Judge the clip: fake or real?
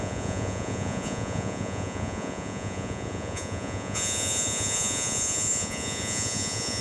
fake